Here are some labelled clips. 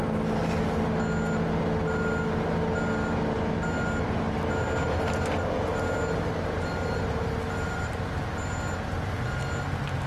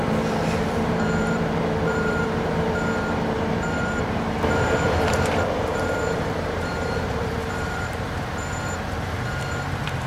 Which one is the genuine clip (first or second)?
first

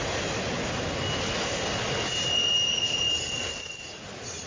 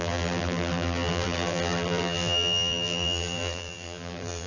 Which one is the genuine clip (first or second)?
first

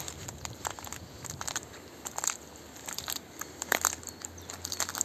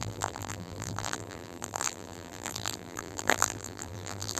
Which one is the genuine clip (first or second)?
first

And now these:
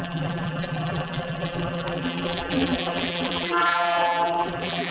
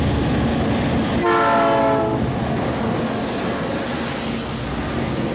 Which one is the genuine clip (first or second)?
second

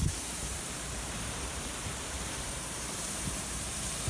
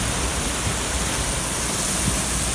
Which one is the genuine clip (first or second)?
second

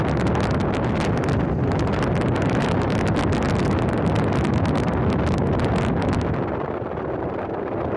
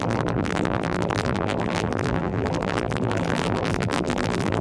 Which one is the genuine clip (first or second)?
first